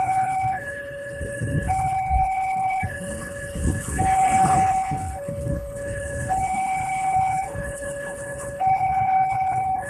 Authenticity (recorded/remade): remade